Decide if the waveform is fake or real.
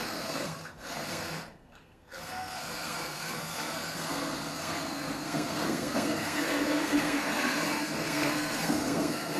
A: fake